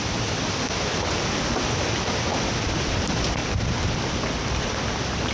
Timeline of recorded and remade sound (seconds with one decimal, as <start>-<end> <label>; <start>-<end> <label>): 0.0-2.3 remade; 2.3-3.0 recorded; 3.0-5.3 remade